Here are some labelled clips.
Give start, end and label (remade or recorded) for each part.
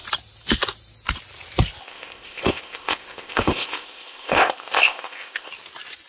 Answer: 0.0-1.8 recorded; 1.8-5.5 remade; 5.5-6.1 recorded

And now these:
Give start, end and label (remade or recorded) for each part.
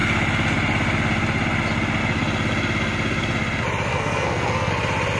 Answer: 0.0-3.9 recorded; 3.9-4.7 remade; 4.7-5.2 recorded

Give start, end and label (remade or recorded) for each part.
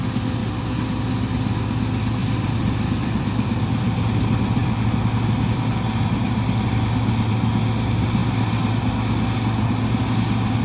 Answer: 0.0-0.4 recorded; 0.4-1.0 remade; 1.0-2.2 recorded; 2.2-3.8 remade; 3.8-8.2 recorded; 8.2-8.7 remade; 8.7-10.6 recorded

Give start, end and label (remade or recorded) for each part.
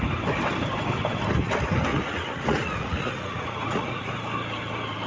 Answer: 0.0-1.9 recorded; 1.9-4.1 remade; 4.1-5.1 recorded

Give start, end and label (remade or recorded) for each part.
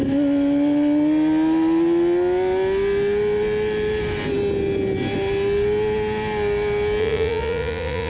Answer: 0.0-7.0 recorded; 7.0-8.1 remade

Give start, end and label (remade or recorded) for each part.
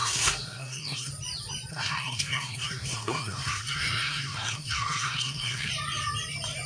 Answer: 0.0-1.1 remade; 1.1-1.7 recorded; 1.7-5.7 remade; 5.7-6.7 recorded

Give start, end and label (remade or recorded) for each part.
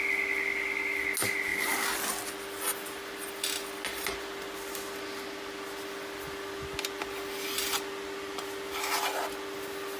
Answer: 0.0-10.0 recorded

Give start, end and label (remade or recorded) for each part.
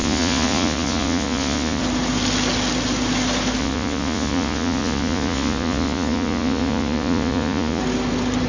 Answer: 0.0-1.8 remade; 1.8-3.6 recorded; 3.6-7.8 remade; 7.8-8.5 recorded